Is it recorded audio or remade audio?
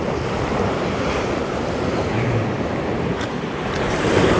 remade